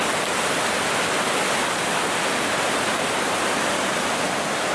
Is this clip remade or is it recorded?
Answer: recorded